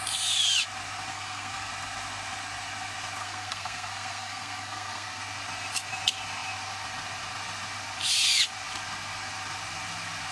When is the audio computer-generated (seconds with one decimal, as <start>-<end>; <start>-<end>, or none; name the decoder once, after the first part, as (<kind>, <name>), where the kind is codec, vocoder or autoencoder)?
1.1-1.7 (codec, SNAC); 3.2-5.2